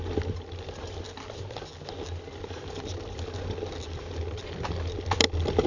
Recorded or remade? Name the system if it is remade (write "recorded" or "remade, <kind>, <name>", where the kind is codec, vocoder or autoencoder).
recorded